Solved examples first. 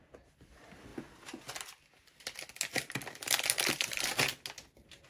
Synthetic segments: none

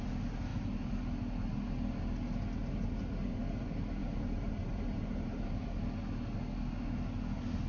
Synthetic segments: 0.5-1.0 (vocoder, BigVGAN v2); 2.6-3.6; 4.0-5.8